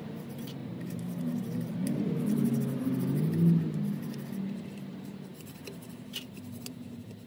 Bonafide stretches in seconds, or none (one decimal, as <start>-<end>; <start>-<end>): 2.5-4.4